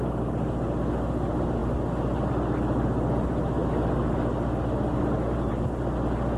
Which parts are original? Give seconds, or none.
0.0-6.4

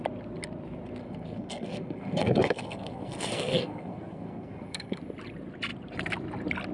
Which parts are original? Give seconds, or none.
0.0-1.0; 5.0-6.7

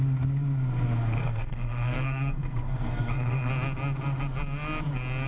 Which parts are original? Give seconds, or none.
0.0-1.2; 3.5-5.3

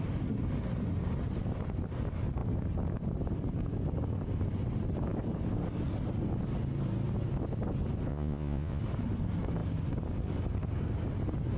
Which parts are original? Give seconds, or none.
0.0-8.1; 8.8-11.6